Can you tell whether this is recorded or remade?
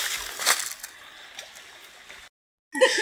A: recorded